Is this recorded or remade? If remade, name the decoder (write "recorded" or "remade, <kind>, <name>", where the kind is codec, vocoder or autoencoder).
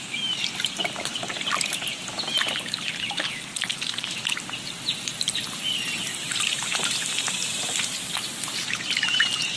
recorded